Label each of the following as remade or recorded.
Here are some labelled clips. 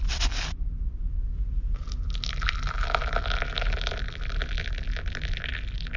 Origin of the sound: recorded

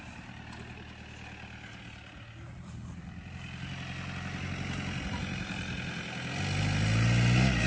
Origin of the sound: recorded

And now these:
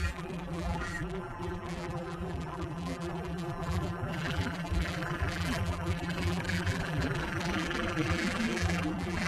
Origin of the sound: remade